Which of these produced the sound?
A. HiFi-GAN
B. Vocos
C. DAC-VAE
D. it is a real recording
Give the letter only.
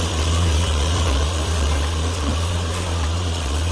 B